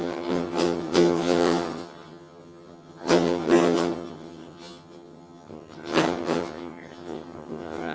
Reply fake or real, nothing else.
fake